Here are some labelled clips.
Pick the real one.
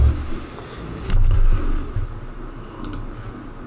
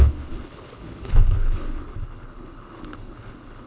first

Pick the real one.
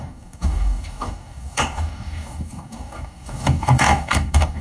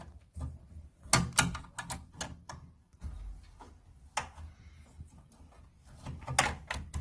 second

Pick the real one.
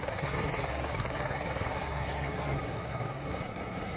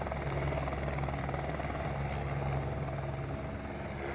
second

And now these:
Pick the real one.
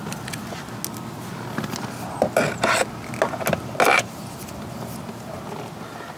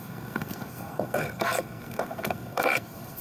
first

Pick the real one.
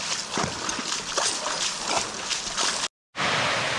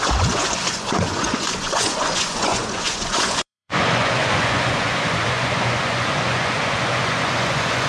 first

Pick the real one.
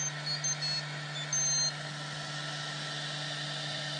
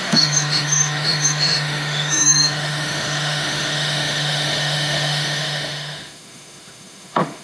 first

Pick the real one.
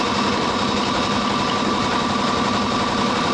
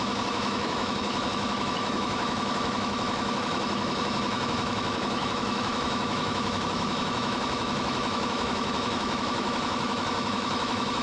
first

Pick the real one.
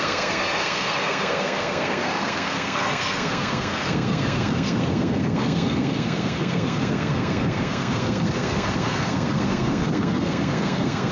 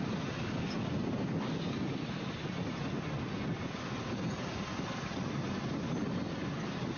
second